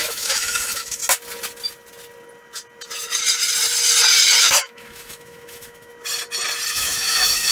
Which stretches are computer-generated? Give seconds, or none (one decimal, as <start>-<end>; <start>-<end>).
0.0-1.0; 4.4-5.9; 6.7-7.5

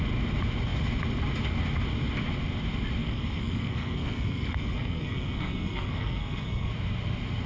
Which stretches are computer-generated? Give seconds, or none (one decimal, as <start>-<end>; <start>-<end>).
3.0-6.7

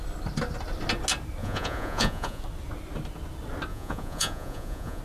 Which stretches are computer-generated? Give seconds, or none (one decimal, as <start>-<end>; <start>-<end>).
1.4-2.4; 3.7-5.0